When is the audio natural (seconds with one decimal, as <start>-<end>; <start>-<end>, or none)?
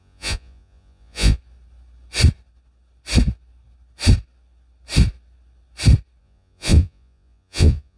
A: 1.4-6.2